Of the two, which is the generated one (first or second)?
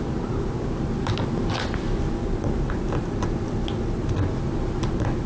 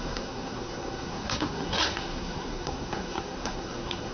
second